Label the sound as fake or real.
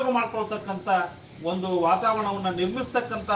fake